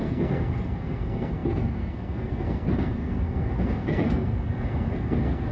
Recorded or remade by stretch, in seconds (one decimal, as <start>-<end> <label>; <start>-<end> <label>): 0.0-5.5 remade